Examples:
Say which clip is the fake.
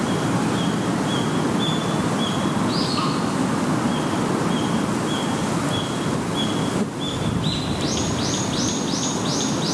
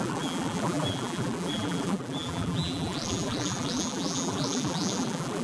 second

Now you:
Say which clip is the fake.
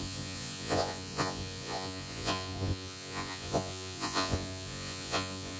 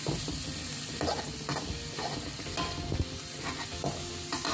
first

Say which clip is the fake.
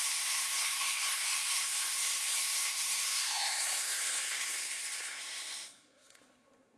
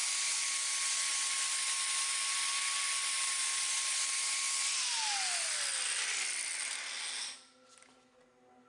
first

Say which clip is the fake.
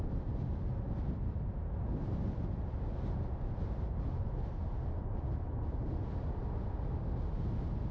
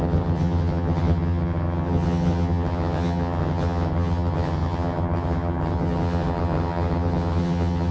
second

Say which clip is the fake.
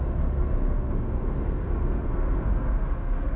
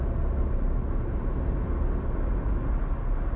first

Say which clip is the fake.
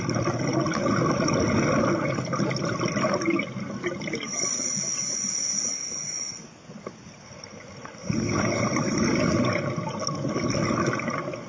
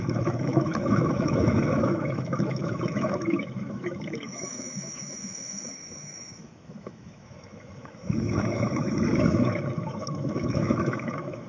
second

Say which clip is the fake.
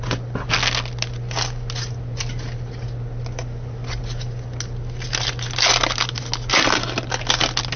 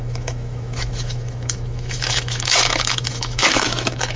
second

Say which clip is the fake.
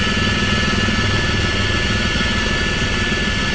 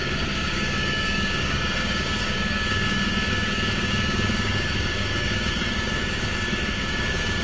second